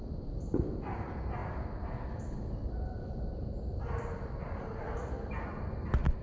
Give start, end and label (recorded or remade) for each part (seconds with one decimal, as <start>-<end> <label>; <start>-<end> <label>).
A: 0.0-6.2 recorded